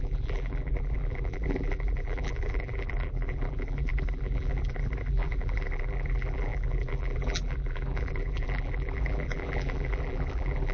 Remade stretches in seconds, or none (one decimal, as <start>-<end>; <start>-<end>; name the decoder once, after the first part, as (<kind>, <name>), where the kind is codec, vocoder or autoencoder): 0.0-10.7 (vocoder, BigVGAN v2)